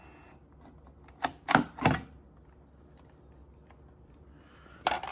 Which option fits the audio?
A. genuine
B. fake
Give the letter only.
A